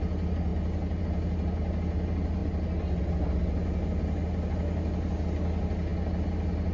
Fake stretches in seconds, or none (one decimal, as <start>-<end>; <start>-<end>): none